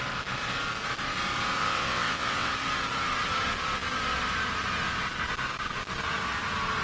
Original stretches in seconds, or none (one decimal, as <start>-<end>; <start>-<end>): 0.0-1.6; 2.5-6.8